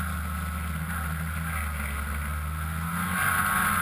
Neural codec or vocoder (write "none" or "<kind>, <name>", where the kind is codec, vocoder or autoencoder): none